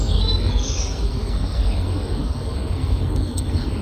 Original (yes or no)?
no